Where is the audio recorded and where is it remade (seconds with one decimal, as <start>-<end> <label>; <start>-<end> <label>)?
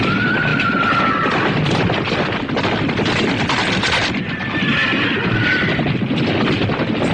0.0-7.1 recorded